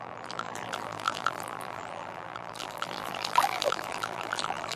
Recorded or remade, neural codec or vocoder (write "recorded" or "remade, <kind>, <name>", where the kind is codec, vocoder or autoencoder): remade, vocoder, BigVGAN v2